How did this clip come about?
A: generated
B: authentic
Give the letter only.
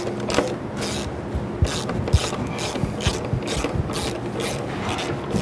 B